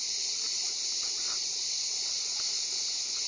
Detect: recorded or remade recorded